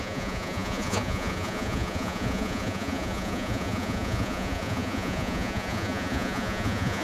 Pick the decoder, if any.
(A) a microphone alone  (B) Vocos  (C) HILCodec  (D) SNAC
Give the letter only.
B